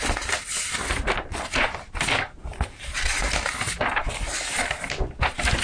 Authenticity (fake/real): real